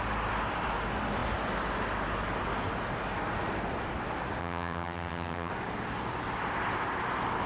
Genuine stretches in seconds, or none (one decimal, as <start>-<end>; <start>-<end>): 0.0-4.4; 5.5-7.5